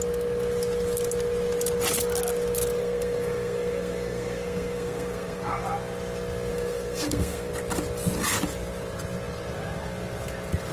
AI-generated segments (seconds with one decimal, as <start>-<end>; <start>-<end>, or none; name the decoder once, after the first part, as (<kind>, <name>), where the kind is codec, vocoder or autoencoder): 2.8-5.6 (codec, SNAC); 6.5-7.5